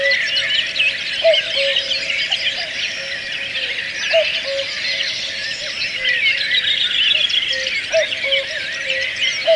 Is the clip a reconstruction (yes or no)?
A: no